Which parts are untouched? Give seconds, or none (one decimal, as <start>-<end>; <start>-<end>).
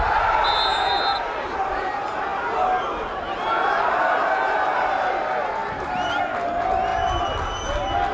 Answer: 0.0-5.6; 6.2-8.1